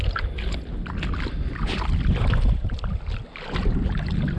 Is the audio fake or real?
real